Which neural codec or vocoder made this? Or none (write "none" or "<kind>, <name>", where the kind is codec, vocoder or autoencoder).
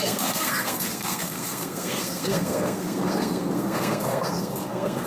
codec, SNAC